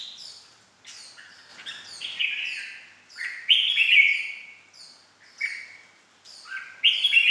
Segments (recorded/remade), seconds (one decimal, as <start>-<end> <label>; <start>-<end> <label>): 0.0-7.3 recorded